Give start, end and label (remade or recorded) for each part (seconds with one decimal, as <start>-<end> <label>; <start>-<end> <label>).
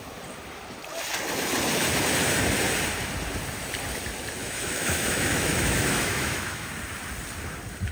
0.0-4.4 recorded; 4.4-6.7 remade; 6.7-7.9 recorded